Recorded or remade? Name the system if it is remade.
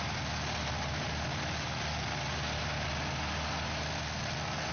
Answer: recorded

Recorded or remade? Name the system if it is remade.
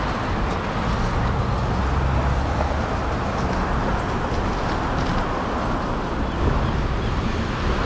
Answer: recorded